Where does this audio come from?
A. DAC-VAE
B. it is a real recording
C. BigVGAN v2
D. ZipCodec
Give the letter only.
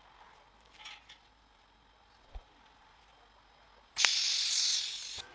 B